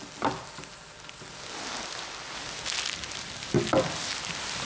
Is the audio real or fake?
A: real